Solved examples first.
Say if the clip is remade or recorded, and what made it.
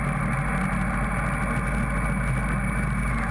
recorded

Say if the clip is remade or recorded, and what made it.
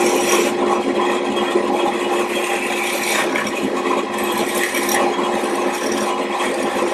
recorded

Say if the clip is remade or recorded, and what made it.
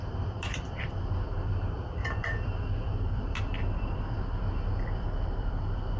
remade, vocoder, BigVGAN v2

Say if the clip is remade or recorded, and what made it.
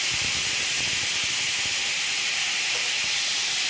recorded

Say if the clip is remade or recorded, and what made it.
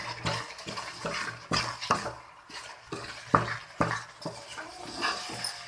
recorded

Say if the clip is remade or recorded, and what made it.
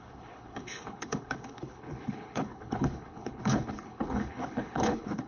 remade, codec, HILCodec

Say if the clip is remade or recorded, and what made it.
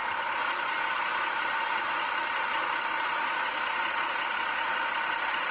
recorded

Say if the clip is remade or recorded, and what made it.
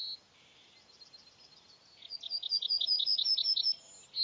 recorded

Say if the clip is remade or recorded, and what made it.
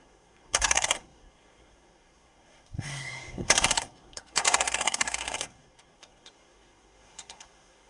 remade, codec, SNAC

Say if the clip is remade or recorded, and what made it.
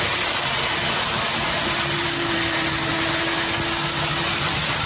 recorded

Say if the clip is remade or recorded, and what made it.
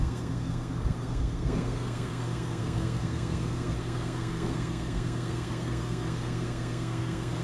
remade, codec, SNAC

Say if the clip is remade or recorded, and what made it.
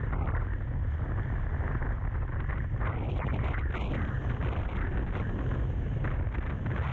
recorded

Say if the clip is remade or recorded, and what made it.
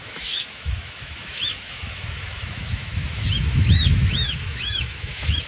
remade, autoencoder, DAC-VAE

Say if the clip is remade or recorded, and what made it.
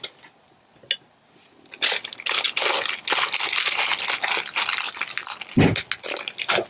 recorded